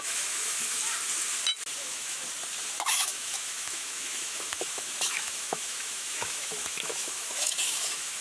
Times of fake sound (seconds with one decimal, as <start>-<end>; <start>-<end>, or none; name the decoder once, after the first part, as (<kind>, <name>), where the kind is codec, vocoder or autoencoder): 0.0-0.8 (autoencoder, DAC-VAE); 1.8-2.2; 2.7-8.2